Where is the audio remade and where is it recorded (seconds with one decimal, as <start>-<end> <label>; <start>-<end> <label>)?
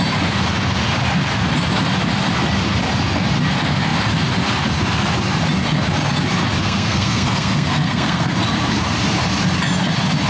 0.0-6.6 recorded; 6.6-8.3 remade; 8.3-10.3 recorded